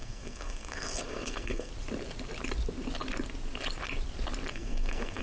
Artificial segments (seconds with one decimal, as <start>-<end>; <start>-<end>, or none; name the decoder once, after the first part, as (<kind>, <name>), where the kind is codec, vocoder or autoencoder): 0.0-1.7 (codec, SNAC); 4.5-5.2